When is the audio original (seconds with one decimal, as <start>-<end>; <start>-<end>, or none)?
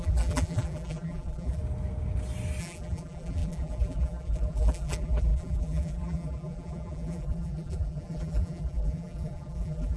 1.6-2.6